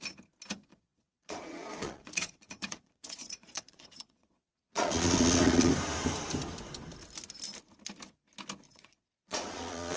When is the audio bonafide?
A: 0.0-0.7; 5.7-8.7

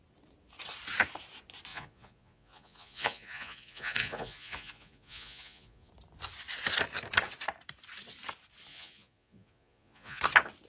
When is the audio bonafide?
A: 0.0-1.7; 5.9-8.7; 10.2-10.7

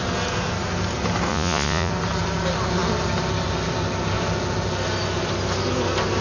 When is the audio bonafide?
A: 0.0-1.3; 1.9-6.2